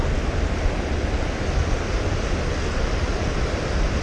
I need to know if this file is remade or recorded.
recorded